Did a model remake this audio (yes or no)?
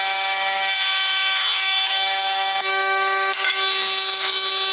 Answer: yes